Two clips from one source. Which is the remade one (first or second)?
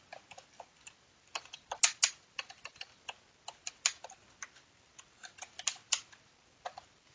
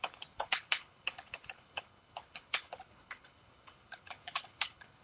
second